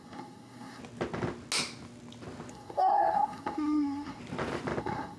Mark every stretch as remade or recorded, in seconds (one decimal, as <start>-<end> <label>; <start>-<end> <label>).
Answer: 0.0-0.8 remade; 0.8-2.5 recorded; 2.5-4.2 remade; 4.2-4.8 recorded; 4.8-5.2 remade

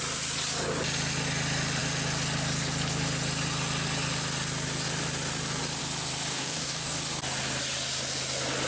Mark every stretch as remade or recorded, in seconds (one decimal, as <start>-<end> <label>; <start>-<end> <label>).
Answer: 0.0-6.3 recorded; 6.3-7.0 remade; 7.0-8.7 recorded

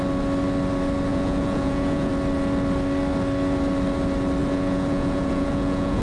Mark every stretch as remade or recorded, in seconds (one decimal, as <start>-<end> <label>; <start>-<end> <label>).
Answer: 0.0-1.1 recorded; 1.1-2.1 remade; 2.1-4.4 recorded; 4.4-6.0 remade

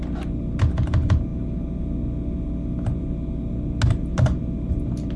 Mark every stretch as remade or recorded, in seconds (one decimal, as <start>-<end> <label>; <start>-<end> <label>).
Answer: 0.0-5.2 recorded

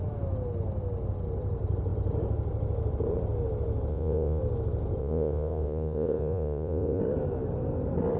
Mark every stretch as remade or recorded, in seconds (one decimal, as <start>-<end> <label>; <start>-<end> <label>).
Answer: 0.0-3.9 recorded; 3.9-4.4 remade; 4.4-5.0 recorded; 5.0-7.0 remade; 7.0-8.2 recorded